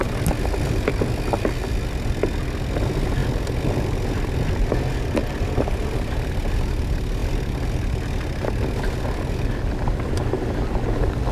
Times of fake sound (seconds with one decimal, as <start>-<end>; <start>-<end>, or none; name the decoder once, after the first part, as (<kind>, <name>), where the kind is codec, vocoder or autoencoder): none